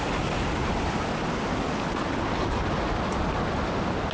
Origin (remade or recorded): recorded